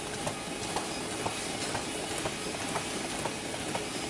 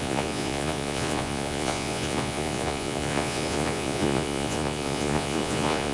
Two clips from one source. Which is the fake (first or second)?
second